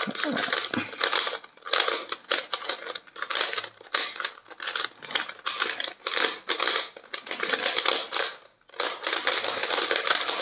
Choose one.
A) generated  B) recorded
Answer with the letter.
B